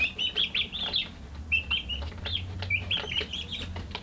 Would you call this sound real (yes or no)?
yes